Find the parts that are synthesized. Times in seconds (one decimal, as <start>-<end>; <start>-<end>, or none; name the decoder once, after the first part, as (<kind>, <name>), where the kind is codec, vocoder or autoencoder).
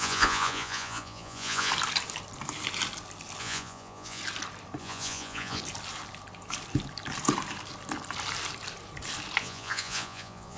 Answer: 0.0-1.7 (vocoder, Vocos); 3.4-4.2; 4.8-5.6; 9.4-10.6